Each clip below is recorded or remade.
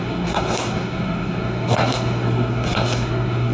remade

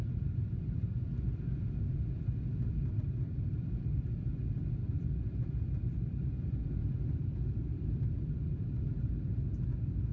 recorded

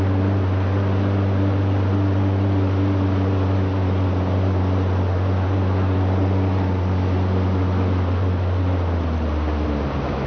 recorded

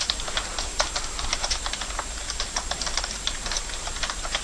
remade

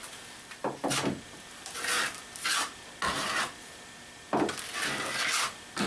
recorded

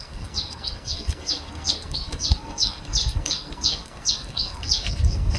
remade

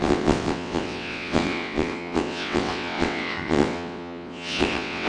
remade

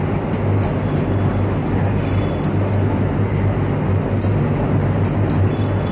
recorded